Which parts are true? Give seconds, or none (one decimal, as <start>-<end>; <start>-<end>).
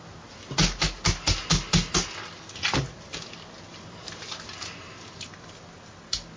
0.0-6.4